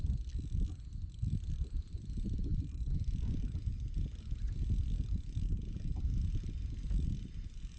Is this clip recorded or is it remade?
recorded